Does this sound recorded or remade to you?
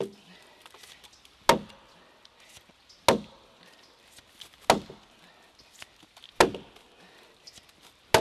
recorded